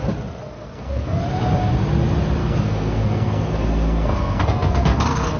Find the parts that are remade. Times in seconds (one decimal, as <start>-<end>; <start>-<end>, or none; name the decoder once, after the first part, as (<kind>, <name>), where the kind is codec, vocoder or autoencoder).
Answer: 0.4-1.2 (codec, SNAC); 2.4-5.4